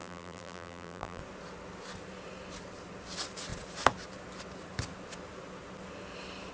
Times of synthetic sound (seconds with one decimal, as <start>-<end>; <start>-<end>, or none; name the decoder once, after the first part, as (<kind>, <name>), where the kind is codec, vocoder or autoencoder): 0.0-1.2 (vocoder, BigVGAN v2)